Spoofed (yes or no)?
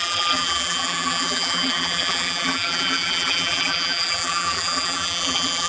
yes